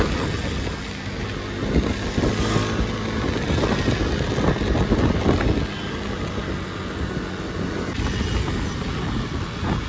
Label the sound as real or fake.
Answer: real